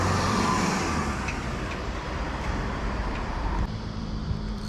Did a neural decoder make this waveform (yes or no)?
yes